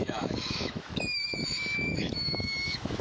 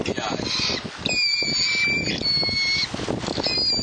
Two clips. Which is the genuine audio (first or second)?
second